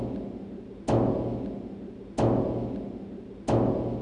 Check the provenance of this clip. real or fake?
real